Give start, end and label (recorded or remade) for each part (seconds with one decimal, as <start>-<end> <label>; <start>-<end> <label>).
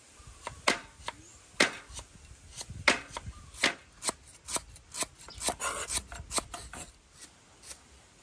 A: 0.0-8.2 recorded